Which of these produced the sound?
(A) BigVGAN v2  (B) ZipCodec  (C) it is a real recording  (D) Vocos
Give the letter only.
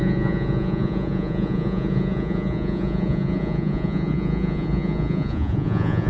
D